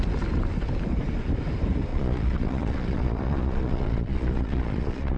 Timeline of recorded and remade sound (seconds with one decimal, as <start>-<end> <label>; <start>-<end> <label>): 0.0-1.9 recorded; 1.9-5.2 remade